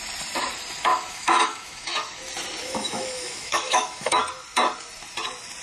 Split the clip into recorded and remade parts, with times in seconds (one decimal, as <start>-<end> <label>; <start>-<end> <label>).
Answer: 0.0-0.9 recorded; 0.9-2.2 remade; 2.2-2.6 recorded; 2.6-4.2 remade; 4.2-5.6 recorded

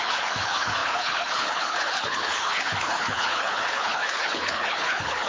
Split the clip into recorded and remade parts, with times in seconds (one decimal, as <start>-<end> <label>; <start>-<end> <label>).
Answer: 0.0-5.3 remade

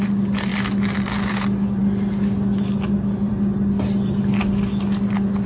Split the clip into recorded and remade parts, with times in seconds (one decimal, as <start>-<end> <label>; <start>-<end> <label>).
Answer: 0.0-5.5 recorded